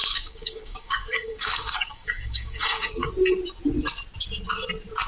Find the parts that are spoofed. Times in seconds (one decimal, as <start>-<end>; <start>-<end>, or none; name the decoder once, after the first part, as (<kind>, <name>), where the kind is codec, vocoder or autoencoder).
0.0-3.1 (codec, DAC)